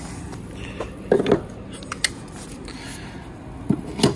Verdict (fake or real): real